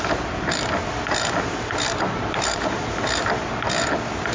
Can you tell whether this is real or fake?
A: real